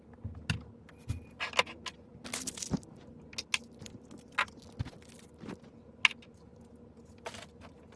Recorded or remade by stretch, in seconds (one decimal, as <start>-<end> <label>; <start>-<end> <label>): 0.0-8.0 recorded

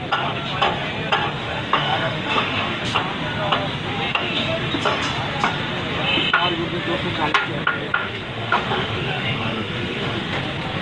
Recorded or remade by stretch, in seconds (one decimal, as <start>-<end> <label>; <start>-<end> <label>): 0.0-1.4 recorded; 1.4-2.8 remade; 2.8-4.1 recorded; 4.1-4.6 remade; 4.6-8.0 recorded; 8.0-10.4 remade; 10.4-10.8 recorded

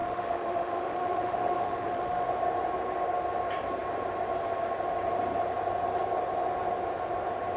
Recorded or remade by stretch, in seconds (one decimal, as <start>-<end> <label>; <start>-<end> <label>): 0.0-2.3 remade; 2.3-7.6 recorded

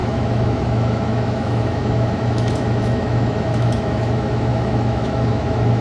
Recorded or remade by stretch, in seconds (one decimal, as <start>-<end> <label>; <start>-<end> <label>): 0.0-5.8 remade

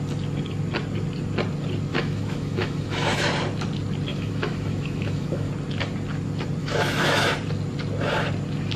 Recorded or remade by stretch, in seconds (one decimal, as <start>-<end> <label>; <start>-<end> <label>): 0.0-1.9 recorded; 1.9-3.3 remade; 3.3-4.1 recorded; 4.1-5.5 remade; 5.5-6.6 recorded; 6.6-7.3 remade; 7.3-8.8 recorded

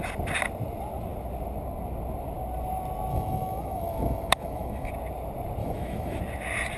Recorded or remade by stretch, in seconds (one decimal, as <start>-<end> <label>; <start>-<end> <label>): 0.0-3.1 recorded; 3.1-4.9 remade; 4.9-5.6 recorded; 5.6-6.2 remade; 6.2-6.8 recorded

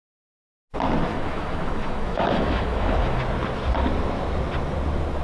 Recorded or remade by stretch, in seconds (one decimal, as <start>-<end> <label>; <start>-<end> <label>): 0.0-1.1 recorded; 1.1-3.2 remade; 3.2-5.2 recorded

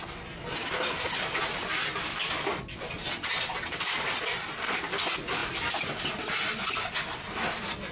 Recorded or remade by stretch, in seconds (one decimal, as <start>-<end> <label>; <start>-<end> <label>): 0.0-7.9 recorded